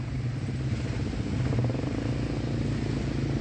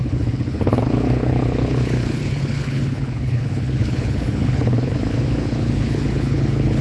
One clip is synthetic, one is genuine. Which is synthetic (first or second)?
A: second